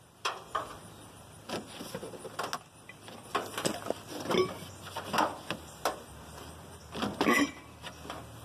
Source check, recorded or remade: recorded